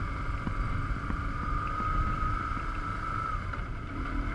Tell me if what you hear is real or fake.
real